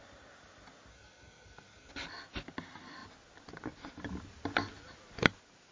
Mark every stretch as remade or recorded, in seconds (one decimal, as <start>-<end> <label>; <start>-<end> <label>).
0.0-0.9 recorded; 0.9-1.9 remade; 1.9-5.7 recorded